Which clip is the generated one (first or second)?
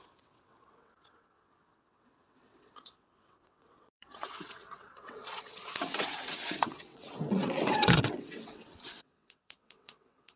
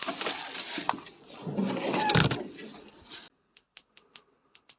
first